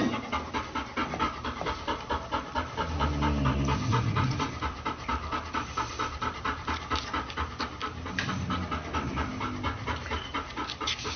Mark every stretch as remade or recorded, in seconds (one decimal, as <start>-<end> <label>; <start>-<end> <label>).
0.0-3.9 recorded; 3.9-4.5 remade; 4.5-11.2 recorded